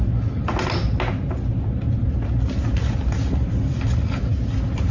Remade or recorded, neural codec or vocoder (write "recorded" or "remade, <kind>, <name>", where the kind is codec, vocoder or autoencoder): recorded